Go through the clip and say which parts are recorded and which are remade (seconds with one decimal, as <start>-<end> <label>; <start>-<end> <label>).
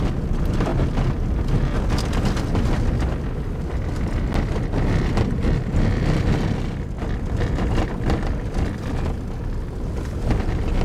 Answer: 0.0-10.8 recorded